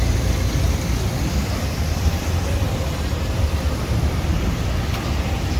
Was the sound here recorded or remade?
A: remade